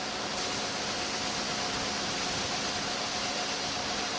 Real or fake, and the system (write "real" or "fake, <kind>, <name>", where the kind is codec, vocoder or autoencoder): real